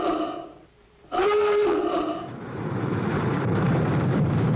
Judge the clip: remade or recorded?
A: remade